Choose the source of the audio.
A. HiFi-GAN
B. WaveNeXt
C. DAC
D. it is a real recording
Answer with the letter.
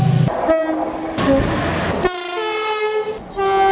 D